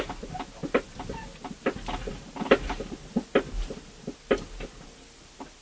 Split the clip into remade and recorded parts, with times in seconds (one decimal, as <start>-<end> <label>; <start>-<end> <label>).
0.0-5.6 recorded